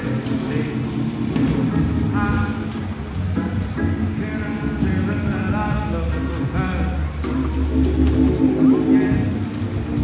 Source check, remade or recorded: recorded